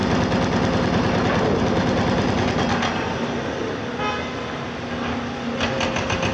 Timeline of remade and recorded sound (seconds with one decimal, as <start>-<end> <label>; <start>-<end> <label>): 0.0-6.3 recorded